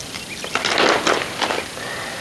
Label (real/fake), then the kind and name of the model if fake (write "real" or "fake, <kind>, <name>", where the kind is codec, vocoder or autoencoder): real